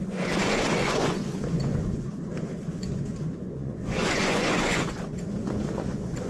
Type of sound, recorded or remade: remade